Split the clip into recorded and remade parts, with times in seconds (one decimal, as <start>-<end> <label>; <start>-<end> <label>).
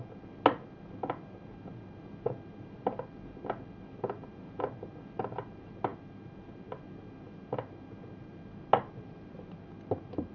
0.0-10.3 recorded